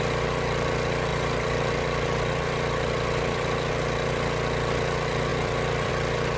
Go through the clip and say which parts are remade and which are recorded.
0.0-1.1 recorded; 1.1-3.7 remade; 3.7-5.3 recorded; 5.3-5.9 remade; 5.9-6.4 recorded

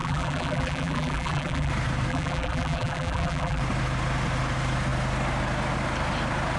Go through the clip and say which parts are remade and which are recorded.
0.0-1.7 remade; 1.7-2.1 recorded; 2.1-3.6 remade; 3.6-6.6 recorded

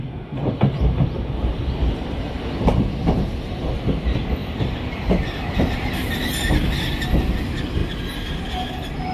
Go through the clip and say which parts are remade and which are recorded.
0.0-9.1 recorded